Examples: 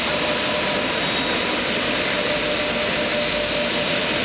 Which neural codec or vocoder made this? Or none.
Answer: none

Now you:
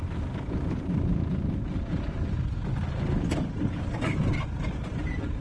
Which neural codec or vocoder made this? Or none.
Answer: none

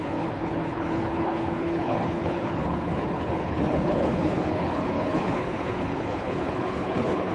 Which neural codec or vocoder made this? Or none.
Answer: codec, HILCodec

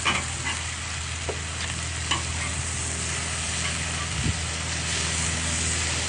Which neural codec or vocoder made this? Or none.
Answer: none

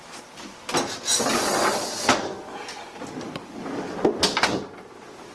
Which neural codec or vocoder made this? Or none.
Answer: none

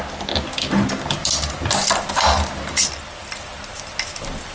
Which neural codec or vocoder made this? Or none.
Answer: none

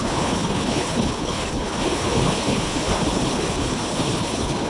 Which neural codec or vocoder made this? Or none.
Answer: codec, HILCodec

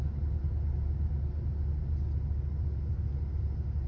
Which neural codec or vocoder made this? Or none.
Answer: none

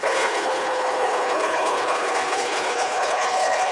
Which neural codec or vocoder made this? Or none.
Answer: codec, HILCodec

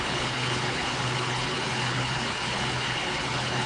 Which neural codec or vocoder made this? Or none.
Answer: codec, HILCodec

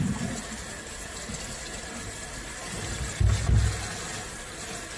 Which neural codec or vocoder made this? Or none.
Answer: none